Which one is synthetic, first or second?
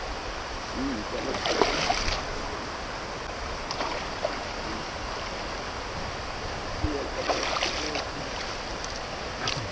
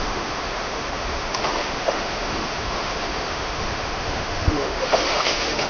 second